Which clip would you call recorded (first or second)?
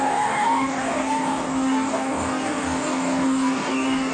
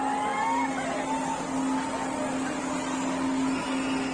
second